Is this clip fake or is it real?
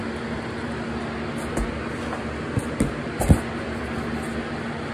real